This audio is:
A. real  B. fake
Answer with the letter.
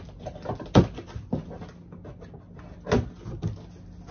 A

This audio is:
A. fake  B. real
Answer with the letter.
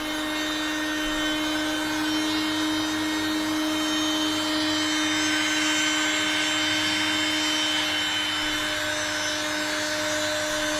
B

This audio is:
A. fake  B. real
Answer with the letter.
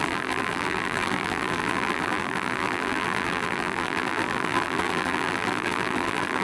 A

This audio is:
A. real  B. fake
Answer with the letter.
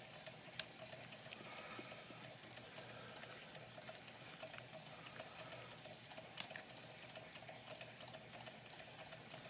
A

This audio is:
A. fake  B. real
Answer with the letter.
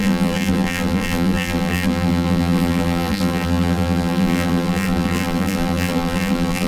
A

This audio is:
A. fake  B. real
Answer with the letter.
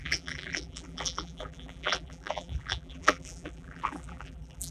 A